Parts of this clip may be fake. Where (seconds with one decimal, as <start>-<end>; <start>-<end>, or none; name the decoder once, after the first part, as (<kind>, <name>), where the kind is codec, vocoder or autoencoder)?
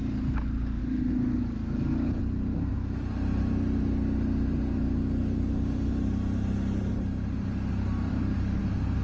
0.8-2.2 (codec, DAC); 5.0-5.9; 8.1-8.6